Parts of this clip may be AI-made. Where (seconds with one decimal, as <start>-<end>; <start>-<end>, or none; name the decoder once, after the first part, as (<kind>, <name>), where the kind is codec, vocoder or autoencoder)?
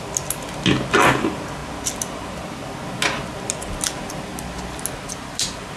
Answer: none